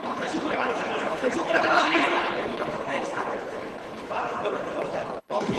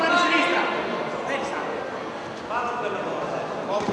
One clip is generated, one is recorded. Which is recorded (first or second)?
second